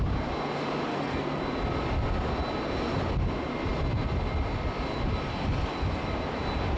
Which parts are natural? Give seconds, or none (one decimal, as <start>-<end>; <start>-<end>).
0.0-0.9; 1.4-6.8